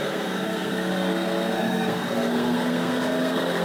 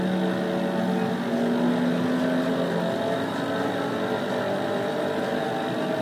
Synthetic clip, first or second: first